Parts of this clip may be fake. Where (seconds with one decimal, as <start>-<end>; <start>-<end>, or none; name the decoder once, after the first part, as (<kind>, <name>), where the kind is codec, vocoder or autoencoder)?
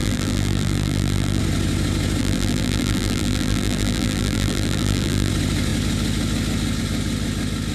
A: 0.0-1.4 (vocoder, BigVGAN v2); 2.2-5.3